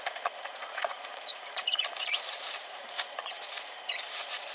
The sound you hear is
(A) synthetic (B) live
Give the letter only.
A